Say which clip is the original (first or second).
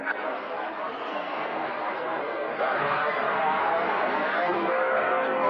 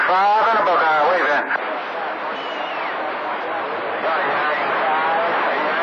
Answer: second